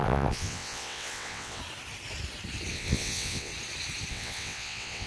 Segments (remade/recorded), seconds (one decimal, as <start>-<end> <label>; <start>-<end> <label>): 0.0-1.6 remade; 1.6-2.7 recorded; 2.7-3.5 remade; 3.5-4.1 recorded; 4.1-5.1 remade